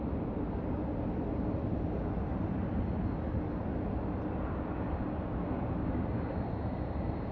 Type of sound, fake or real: real